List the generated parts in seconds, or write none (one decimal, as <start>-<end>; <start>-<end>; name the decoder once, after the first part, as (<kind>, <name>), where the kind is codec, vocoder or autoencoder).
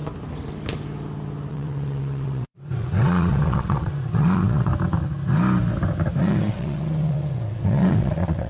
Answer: 1.5-4.7 (vocoder, WaveNeXt); 6.2-8.5